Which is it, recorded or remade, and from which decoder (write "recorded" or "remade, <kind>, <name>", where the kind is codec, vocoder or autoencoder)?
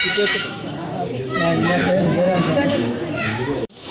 remade, autoencoder, DAC-VAE